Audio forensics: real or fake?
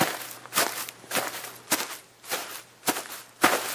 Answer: real